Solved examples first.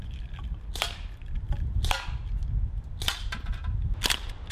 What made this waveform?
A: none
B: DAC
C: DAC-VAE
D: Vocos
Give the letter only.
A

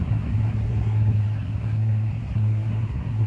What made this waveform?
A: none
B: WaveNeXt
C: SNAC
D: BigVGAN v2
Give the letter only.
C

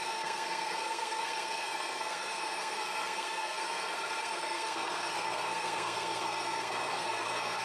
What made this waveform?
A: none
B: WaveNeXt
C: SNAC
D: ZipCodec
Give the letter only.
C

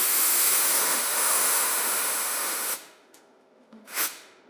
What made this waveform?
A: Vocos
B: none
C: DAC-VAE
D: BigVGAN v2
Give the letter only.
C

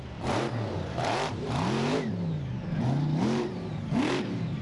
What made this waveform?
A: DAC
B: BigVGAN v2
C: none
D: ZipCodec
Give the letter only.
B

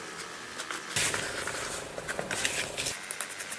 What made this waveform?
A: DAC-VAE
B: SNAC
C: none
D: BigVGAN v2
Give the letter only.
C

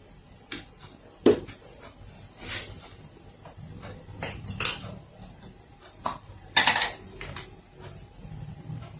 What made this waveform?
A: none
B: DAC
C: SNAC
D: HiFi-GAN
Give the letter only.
A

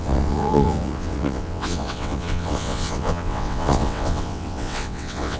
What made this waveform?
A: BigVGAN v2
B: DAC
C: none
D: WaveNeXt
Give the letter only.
D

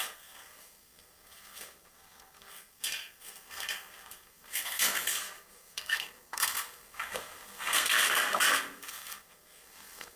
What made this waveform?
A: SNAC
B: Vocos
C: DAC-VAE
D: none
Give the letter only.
A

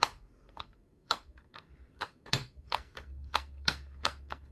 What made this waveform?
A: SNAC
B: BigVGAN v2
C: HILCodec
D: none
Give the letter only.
A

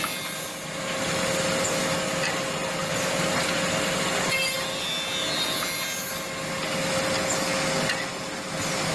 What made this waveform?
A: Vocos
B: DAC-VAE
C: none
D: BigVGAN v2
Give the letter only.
C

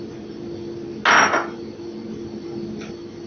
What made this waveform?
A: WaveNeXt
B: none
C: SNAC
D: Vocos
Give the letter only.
B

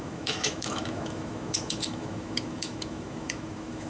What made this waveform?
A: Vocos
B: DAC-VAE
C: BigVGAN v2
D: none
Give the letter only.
B